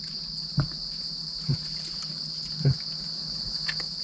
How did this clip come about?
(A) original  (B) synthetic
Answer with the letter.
A